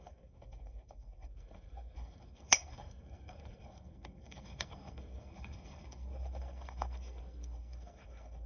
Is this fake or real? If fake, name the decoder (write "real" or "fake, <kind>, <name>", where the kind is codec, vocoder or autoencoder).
fake, codec, SNAC